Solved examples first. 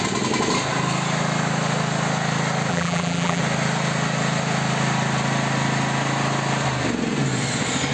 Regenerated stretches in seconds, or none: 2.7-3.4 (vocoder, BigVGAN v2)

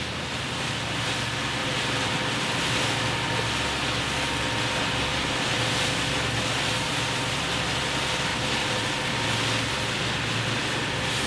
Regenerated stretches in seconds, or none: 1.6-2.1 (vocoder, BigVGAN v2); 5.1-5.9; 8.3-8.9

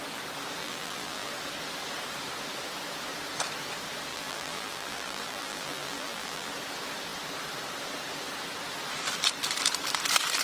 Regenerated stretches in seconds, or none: 0.6-1.3 (vocoder, BigVGAN v2); 4.1-6.5

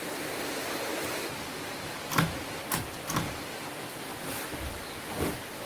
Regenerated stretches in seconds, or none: 0.9-2.5 (vocoder, BigVGAN v2); 4.1-5.2

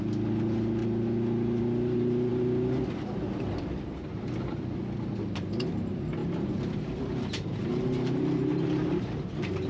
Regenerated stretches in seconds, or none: 6.2-9.7 (vocoder, BigVGAN v2)

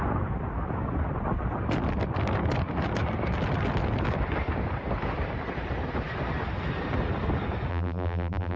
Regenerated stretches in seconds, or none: 7.7-8.6 (vocoder, BigVGAN v2)

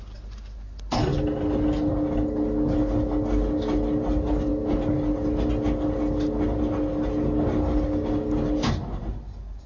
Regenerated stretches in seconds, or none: none

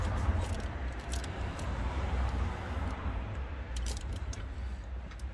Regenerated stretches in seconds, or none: 1.2-4.4 (vocoder, BigVGAN v2)